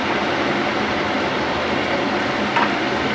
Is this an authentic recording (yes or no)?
yes